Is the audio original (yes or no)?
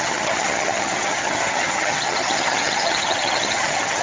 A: no